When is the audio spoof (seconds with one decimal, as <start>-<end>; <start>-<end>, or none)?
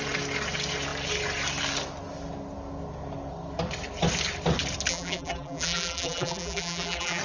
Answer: 4.9-7.2